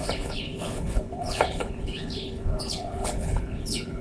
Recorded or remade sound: remade